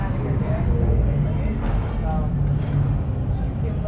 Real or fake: real